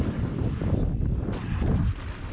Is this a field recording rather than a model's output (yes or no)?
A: yes